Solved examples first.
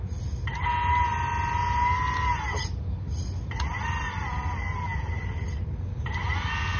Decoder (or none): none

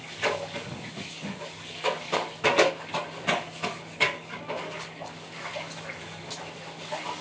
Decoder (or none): codec, DAC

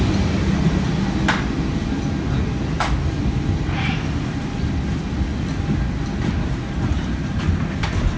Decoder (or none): none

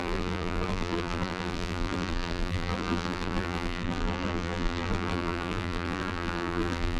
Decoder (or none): vocoder, BigVGAN v2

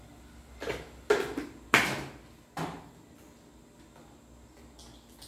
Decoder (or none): none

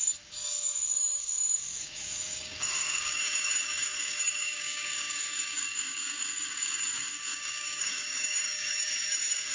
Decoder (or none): codec, DAC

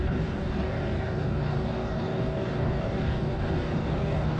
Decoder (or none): codec, DAC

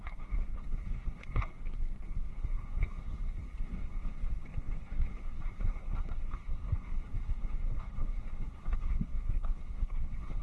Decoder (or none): codec, SNAC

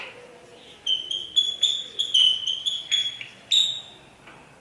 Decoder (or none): none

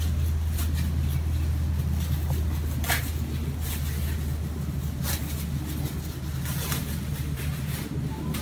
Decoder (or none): none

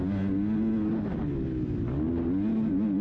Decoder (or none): none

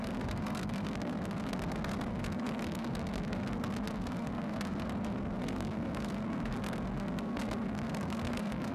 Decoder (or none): codec, SNAC